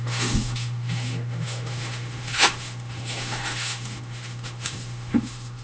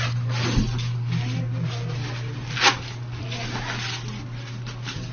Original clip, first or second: second